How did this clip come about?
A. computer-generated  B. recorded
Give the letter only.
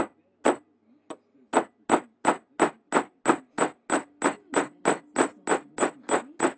B